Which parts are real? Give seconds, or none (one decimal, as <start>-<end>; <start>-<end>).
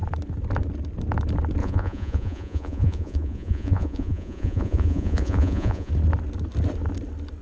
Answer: 0.0-1.6; 5.9-7.4